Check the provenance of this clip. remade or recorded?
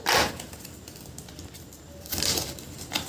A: recorded